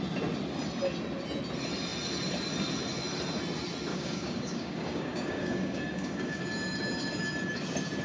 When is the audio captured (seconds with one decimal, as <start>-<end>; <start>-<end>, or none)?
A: 0.0-3.9; 6.4-8.0